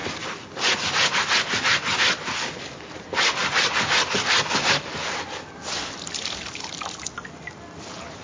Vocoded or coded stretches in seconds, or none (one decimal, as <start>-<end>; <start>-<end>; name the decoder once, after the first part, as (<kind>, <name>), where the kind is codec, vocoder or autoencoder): none